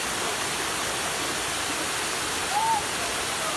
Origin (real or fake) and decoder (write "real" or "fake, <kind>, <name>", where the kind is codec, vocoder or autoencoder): real